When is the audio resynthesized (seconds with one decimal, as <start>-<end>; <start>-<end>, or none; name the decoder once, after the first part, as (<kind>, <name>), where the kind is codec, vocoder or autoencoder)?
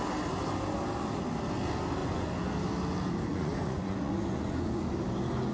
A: 2.0-2.5 (vocoder, Vocos); 3.3-4.8